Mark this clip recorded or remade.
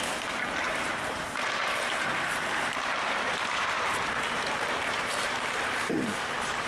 remade